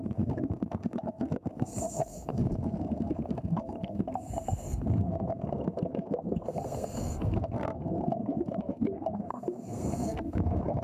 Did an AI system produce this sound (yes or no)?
yes